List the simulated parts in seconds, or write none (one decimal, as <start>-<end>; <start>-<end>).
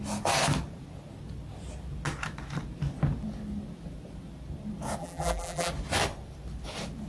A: 5.0-5.7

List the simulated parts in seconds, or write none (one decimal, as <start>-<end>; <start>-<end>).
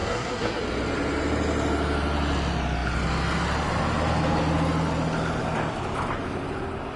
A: 0.0-0.6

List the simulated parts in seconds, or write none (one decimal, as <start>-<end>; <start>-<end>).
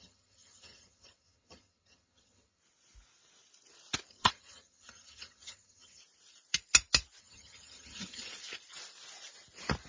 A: 0.0-2.6; 4.1-6.0; 7.2-8.3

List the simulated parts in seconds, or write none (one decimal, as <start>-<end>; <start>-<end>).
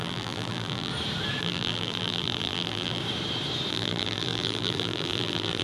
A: 0.0-0.9; 1.4-3.0; 3.7-5.6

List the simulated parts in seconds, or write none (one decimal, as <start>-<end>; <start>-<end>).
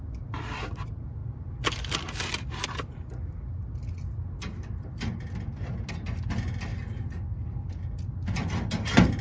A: none